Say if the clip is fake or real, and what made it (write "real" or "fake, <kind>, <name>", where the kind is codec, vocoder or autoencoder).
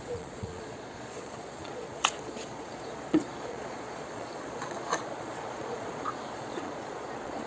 fake, vocoder, Vocos